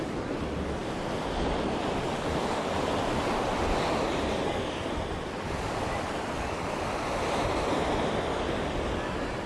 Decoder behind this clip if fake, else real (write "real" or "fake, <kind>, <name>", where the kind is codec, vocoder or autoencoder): real